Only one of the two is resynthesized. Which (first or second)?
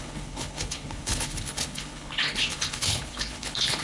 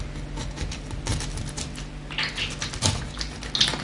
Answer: first